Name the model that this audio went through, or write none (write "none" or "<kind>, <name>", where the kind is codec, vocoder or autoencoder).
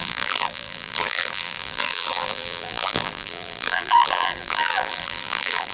vocoder, BigVGAN v2